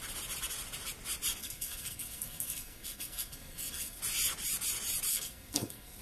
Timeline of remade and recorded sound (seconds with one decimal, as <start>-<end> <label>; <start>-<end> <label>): 0.0-1.4 recorded; 1.4-4.0 remade; 4.0-5.1 recorded; 5.1-6.0 remade

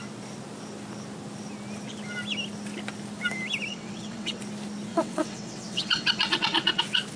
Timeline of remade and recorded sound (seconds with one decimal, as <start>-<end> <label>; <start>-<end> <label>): 0.0-3.7 recorded; 3.7-4.4 remade; 4.4-4.9 recorded; 4.9-6.8 remade; 6.8-7.2 recorded